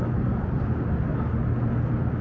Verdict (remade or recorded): recorded